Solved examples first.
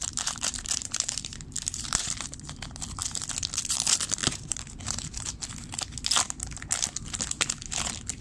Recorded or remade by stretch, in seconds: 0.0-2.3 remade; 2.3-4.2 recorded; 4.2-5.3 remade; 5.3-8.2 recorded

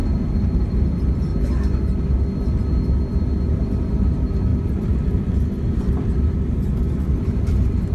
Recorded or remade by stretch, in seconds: 0.0-1.3 remade; 1.3-3.5 recorded; 3.5-7.9 remade

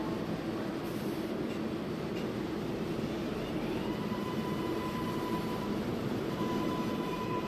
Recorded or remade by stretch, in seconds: 0.0-1.8 recorded; 1.8-7.5 remade

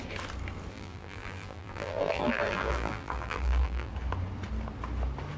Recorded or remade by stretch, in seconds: 0.0-0.7 recorded; 0.7-3.9 remade; 3.9-5.4 recorded

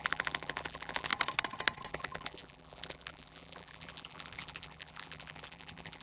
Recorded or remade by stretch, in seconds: 0.0-1.1 remade; 1.1-1.9 recorded; 1.9-6.0 remade

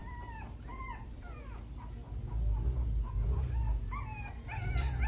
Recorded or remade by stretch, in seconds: 0.0-5.1 recorded

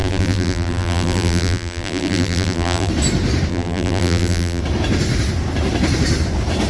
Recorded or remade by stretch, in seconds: 0.0-2.9 remade; 2.9-3.5 recorded; 3.5-4.6 remade; 4.6-6.7 recorded

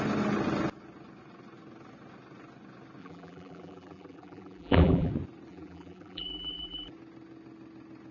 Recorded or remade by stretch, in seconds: 0.0-3.0 recorded; 3.0-5.1 remade; 5.1-5.5 recorded; 5.5-6.9 remade; 6.9-8.1 recorded